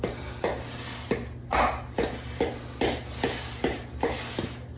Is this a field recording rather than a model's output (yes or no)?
yes